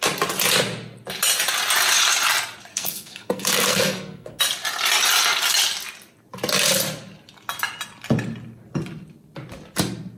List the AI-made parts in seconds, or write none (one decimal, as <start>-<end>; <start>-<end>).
2.7-4.4